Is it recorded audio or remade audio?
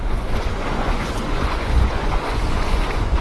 remade